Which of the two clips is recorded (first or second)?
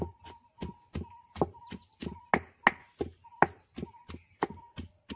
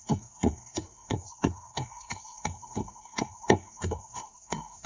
first